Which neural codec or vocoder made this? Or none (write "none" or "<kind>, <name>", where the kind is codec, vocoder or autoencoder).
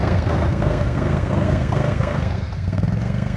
codec, SNAC